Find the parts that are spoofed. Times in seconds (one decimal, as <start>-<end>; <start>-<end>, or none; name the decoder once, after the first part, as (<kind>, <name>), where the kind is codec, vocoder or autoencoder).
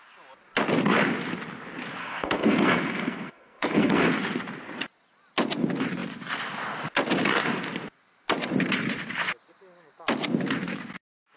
2.0-4.1 (codec, SNAC)